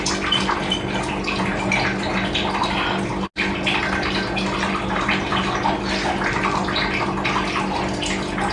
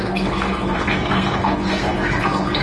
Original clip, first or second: first